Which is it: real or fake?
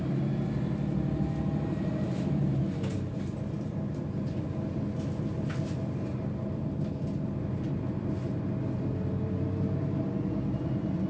real